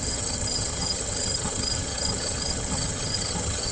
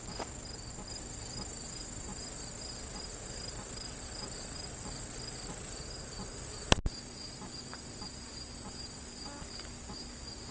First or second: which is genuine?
second